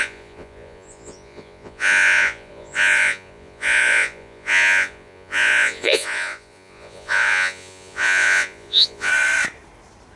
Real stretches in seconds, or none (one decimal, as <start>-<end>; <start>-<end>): 9.1-10.2